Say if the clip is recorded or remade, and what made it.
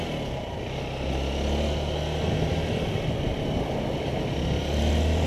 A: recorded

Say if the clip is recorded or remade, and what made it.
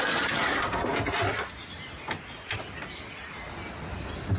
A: recorded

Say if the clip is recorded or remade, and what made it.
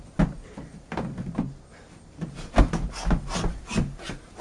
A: recorded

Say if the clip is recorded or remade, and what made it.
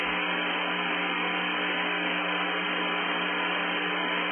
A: recorded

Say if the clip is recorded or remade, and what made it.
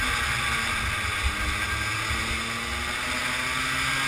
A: recorded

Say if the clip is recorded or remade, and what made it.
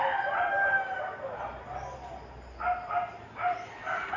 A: recorded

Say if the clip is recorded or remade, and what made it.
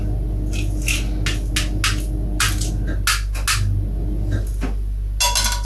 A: recorded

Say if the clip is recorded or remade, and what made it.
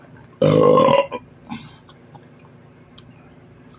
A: remade, vocoder, BigVGAN v2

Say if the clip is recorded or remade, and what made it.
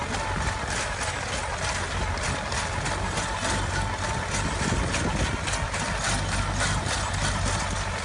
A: recorded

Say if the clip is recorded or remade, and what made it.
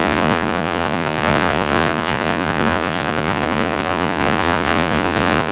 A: remade, vocoder, Vocos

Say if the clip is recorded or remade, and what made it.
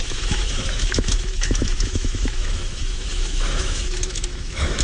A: remade, autoencoder, DAC-VAE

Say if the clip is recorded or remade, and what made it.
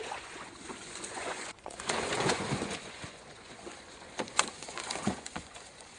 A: remade, vocoder, Vocos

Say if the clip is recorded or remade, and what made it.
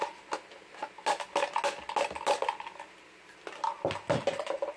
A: recorded